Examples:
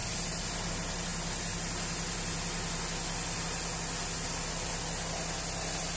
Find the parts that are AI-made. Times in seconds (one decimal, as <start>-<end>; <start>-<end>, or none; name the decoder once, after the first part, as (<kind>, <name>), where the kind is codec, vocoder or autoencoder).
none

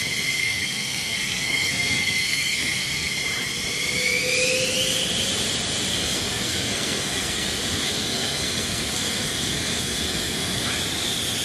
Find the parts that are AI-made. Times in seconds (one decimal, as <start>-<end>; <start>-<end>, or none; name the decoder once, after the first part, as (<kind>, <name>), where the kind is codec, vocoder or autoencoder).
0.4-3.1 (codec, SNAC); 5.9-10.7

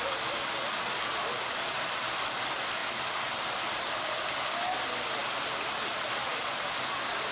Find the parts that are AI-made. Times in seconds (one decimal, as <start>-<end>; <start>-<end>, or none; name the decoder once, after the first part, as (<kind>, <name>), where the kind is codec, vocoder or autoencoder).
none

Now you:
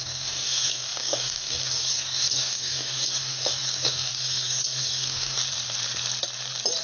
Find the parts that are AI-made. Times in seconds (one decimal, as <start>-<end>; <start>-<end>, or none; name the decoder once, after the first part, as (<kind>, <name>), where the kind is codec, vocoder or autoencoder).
0.0-5.4 (codec, DAC)

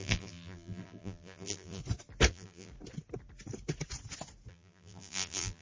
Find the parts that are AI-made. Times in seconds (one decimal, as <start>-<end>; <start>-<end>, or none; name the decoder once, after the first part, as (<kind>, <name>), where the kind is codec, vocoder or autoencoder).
0.0-1.8 (vocoder, BigVGAN v2); 2.3-2.7; 4.5-5.6

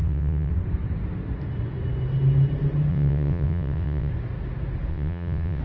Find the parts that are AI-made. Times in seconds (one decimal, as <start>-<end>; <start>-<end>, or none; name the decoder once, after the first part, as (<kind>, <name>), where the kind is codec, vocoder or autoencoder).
0.0-0.5 (vocoder, WaveNeXt); 2.9-4.1; 4.9-5.6

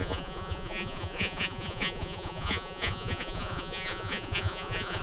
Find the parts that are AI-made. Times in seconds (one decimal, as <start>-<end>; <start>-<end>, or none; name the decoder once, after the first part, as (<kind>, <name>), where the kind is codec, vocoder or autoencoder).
0.0-5.0 (vocoder, Vocos)